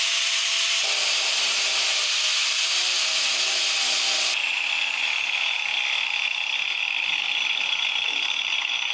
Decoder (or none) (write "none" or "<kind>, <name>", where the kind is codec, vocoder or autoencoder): none